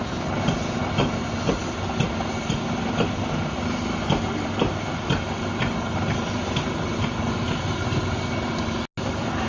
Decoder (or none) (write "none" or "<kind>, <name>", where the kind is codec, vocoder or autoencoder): none